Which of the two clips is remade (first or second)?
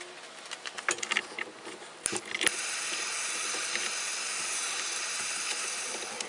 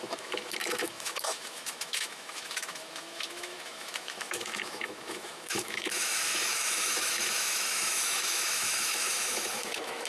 second